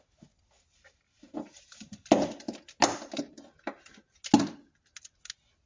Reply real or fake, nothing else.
real